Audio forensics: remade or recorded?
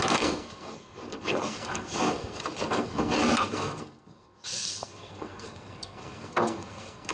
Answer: remade